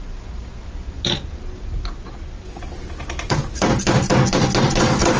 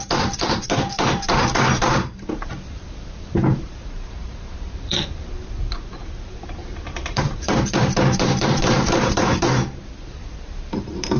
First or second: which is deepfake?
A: second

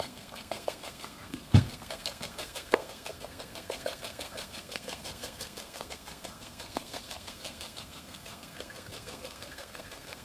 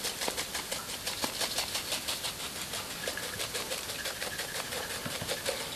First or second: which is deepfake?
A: first